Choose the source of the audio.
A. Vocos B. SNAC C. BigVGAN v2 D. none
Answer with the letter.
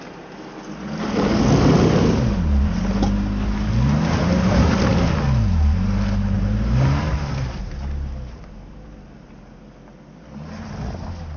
D